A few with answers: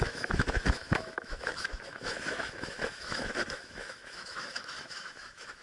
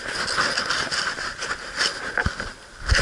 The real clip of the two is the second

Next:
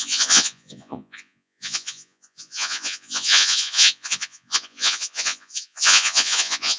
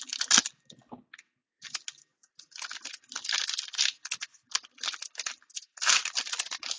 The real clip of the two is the second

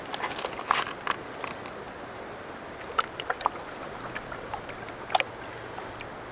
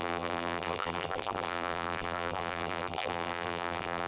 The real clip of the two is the first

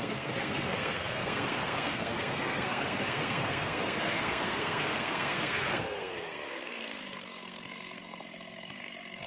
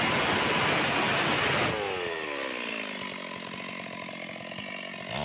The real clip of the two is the second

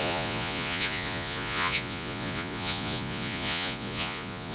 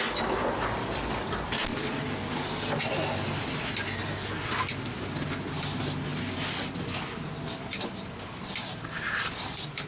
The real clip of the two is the second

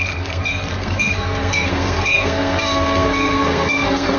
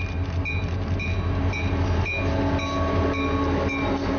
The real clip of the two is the second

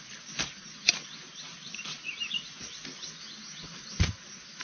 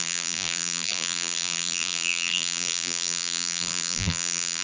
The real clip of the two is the first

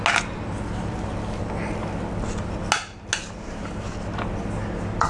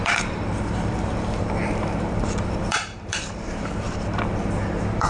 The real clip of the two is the first